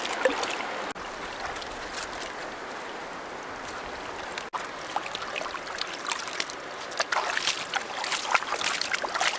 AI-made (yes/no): no